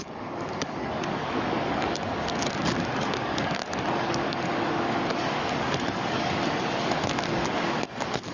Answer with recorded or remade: remade